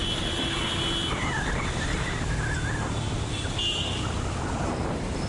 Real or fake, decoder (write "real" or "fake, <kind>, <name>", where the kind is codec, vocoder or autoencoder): real